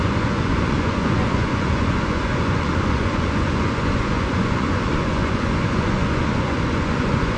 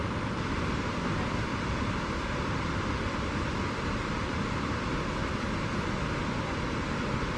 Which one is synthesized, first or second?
first